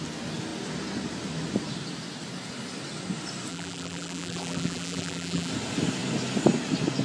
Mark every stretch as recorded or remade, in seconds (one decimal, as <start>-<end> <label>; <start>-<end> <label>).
0.0-3.5 recorded; 3.5-5.5 remade; 5.5-7.0 recorded